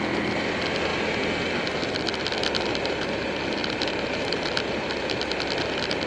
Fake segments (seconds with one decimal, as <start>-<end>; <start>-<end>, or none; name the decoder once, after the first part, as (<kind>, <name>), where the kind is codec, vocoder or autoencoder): none